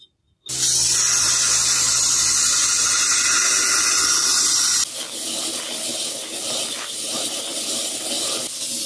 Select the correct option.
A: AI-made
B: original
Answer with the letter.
B